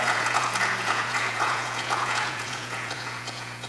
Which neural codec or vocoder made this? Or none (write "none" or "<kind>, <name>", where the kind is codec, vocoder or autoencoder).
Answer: vocoder, Vocos